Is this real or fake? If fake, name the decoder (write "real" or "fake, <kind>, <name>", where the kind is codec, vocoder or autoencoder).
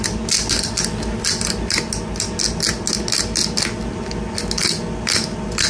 real